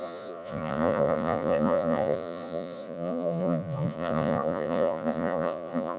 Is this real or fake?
fake